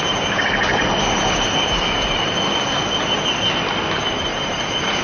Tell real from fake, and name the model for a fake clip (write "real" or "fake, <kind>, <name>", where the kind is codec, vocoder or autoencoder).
real